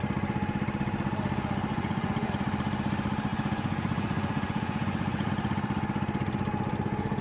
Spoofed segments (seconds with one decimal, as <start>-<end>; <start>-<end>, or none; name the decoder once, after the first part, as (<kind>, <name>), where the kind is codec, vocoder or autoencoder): 1.7-2.3 (vocoder, Vocos); 3.3-5.3